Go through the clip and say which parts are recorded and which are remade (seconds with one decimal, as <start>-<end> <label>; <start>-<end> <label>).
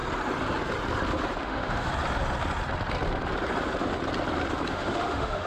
0.0-1.4 recorded; 1.4-1.9 remade; 1.9-4.7 recorded; 4.7-5.5 remade